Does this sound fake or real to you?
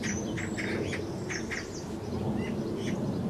real